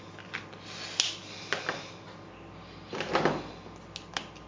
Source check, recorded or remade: recorded